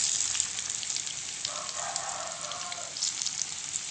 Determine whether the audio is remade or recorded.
recorded